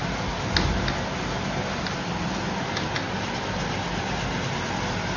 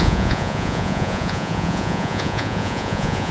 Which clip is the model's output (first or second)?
second